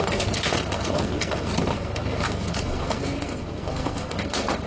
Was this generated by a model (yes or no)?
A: yes